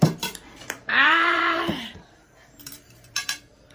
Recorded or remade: remade